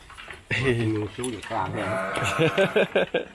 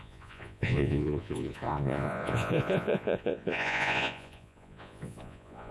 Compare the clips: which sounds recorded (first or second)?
first